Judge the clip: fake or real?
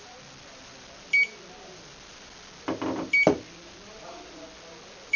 real